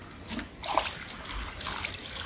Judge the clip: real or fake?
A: real